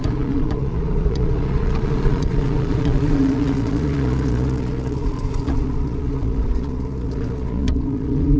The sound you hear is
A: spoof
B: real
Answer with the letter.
A